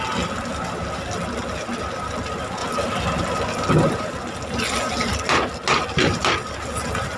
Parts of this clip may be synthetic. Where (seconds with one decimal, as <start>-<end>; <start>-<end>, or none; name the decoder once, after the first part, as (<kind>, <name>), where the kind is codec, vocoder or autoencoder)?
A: none